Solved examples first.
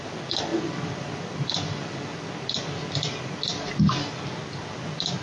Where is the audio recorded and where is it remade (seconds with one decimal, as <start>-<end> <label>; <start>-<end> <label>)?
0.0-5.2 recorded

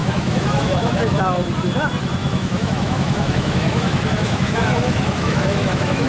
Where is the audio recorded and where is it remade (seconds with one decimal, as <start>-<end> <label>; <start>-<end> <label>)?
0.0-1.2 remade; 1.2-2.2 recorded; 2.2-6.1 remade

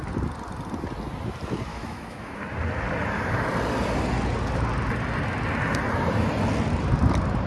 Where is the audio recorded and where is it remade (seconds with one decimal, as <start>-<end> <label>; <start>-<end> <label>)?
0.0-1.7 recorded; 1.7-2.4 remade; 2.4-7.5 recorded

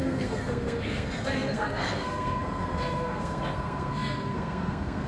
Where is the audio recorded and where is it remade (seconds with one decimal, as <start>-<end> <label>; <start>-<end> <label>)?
0.0-5.1 remade

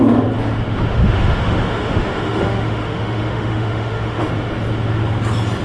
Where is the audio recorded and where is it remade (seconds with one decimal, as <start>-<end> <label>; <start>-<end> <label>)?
0.0-0.9 recorded; 0.9-4.3 remade; 4.3-5.6 recorded